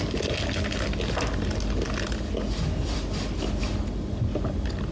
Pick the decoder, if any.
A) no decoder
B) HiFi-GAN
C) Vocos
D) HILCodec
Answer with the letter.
A